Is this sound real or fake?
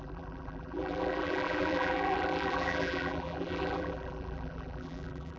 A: fake